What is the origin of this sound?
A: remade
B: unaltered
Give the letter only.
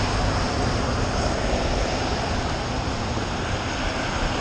B